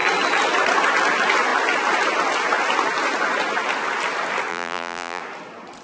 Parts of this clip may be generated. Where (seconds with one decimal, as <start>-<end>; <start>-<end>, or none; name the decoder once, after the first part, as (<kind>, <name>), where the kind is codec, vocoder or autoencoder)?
4.5-5.2 (vocoder, BigVGAN v2)